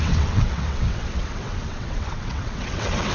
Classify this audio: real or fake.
fake